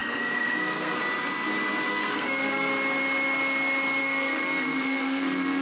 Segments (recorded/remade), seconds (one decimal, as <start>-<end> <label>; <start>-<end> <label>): 0.0-1.0 remade; 1.0-1.9 recorded; 1.9-2.7 remade; 2.7-4.0 recorded; 4.0-5.6 remade